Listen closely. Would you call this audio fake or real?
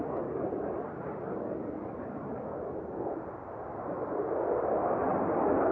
real